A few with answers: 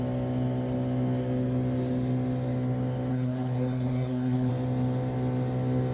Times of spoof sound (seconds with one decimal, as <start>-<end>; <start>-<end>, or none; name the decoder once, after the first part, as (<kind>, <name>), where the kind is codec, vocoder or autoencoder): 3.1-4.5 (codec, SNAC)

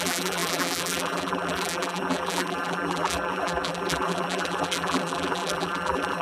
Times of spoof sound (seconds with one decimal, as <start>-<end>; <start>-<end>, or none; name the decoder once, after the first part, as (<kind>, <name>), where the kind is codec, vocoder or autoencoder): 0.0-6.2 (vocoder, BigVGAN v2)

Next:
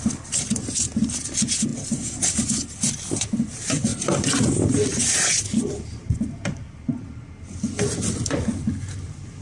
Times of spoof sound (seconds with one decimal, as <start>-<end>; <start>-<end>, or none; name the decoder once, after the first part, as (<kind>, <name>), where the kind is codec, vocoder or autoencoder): 1.7-2.8 (vocoder, BigVGAN v2); 3.9-6.9

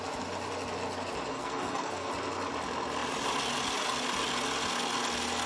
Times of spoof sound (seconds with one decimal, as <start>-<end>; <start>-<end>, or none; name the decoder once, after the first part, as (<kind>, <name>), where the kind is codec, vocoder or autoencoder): 1.3-2.1 (codec, SNAC)

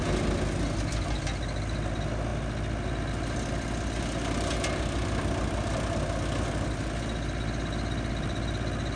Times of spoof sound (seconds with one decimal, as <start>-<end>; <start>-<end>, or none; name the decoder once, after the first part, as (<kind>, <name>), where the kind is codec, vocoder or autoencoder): none

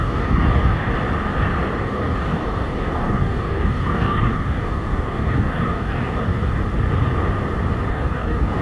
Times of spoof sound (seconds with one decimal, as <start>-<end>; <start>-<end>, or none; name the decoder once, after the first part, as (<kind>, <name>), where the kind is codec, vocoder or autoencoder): 0.0-0.9 (codec, DAC); 1.8-6.6; 7.9-8.6